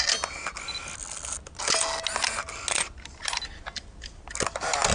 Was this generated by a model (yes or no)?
no